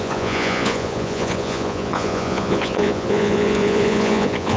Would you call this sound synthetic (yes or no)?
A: yes